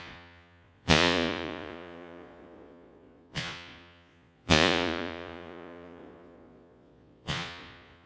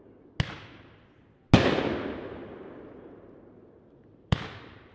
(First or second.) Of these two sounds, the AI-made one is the first